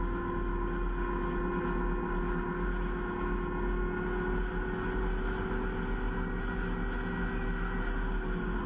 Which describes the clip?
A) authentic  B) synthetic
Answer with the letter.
A